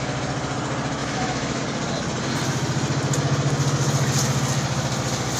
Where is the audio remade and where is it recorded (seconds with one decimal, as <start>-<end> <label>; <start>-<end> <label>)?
0.0-1.0 recorded; 1.0-1.6 remade; 1.6-5.4 recorded